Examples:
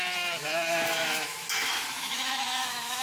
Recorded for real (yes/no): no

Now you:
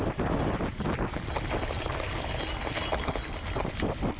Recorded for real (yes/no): yes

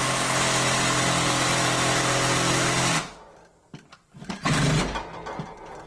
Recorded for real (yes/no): yes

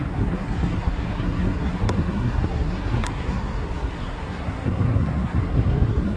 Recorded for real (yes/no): no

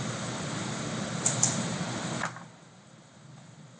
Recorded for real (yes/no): no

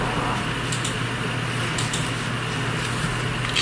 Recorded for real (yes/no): yes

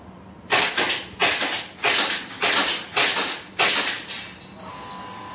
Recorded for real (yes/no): yes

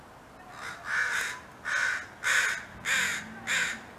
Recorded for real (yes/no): yes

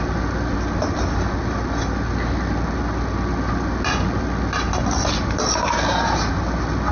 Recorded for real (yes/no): yes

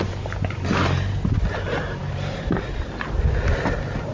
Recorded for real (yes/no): yes